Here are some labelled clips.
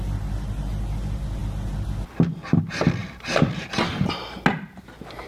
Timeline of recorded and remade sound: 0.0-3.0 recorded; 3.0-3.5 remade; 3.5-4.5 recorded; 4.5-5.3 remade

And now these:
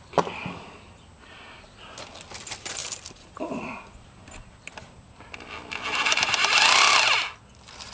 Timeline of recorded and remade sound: 0.0-7.9 recorded

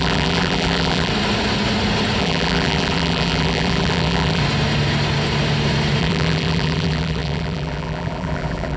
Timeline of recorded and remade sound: 0.0-1.1 remade; 1.1-2.2 recorded; 2.2-4.4 remade; 4.4-6.0 recorded; 6.0-8.8 remade

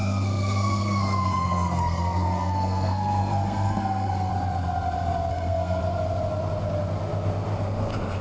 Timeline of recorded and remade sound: 0.0-4.3 remade; 4.3-5.3 recorded; 5.3-5.8 remade; 5.8-8.2 recorded